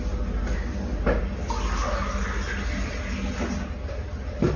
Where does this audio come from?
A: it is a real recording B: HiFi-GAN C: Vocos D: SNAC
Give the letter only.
A